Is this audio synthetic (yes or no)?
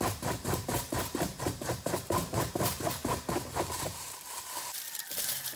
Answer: yes